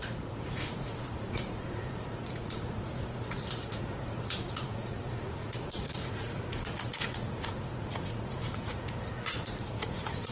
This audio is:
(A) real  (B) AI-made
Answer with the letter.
B